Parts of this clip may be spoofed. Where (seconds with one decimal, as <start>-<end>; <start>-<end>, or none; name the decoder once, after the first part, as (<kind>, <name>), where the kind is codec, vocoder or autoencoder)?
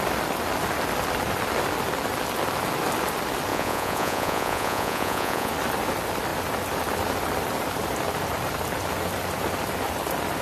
3.5-5.5 (vocoder, Vocos)